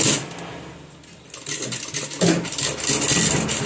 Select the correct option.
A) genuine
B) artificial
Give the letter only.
A